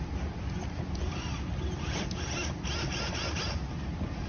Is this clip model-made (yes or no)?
no